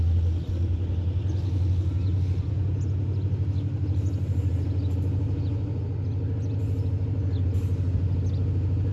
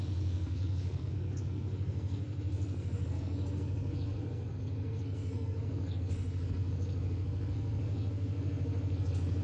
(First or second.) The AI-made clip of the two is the second